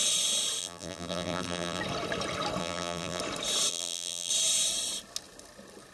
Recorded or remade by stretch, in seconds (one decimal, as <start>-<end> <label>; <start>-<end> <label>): 0.0-0.6 recorded; 0.6-1.8 remade; 1.8-2.6 recorded; 2.6-3.2 remade; 3.2-3.7 recorded; 3.7-4.3 remade; 4.3-5.9 recorded